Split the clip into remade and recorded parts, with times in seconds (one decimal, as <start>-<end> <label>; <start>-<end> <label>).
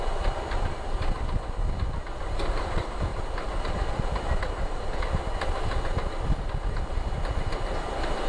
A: 0.0-8.3 recorded